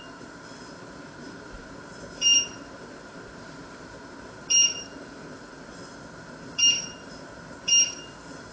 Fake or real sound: fake